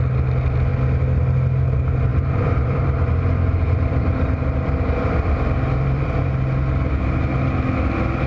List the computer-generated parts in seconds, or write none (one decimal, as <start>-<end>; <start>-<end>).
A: 2.1-6.2